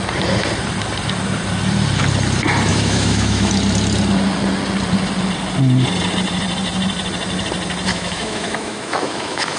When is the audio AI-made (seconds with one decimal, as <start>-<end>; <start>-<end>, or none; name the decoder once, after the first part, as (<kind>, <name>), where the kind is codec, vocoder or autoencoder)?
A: 2.7-3.5 (autoencoder, DAC-VAE); 7.9-9.6